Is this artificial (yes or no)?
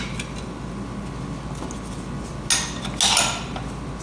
no